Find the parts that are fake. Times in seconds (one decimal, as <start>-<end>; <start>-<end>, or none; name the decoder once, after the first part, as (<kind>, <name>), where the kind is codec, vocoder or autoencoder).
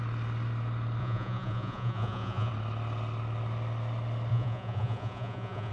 1.0-2.5 (vocoder, Vocos); 4.3-5.7